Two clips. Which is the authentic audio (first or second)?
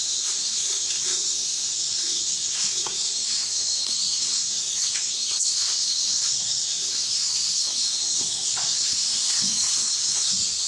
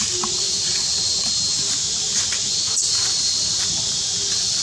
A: second